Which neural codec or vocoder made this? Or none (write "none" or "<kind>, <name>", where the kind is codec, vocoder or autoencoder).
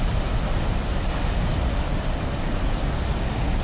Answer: none